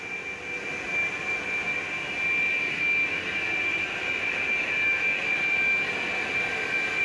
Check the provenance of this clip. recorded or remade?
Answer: recorded